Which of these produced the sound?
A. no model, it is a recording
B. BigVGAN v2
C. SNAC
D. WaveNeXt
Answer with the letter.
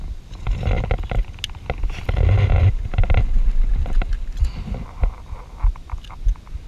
A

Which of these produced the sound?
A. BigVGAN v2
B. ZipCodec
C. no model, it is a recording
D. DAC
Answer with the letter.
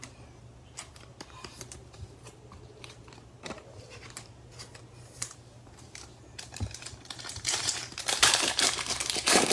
A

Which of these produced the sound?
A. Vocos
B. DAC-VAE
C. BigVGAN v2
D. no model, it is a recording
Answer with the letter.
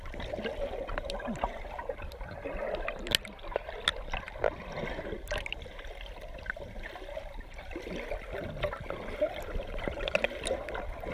D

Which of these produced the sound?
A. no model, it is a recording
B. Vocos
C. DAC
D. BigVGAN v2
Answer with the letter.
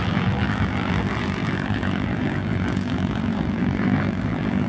D